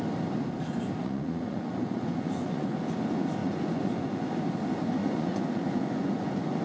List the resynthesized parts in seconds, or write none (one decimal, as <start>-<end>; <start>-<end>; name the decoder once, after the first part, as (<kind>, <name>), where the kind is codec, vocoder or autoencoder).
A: 1.0-2.8 (vocoder, Vocos); 3.4-4.3; 5.0-6.6